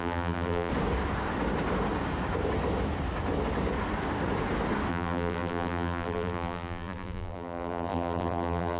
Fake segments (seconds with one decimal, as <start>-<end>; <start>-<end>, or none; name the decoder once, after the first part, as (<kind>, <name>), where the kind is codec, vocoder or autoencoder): 0.0-0.7 (vocoder, BigVGAN v2); 4.9-8.8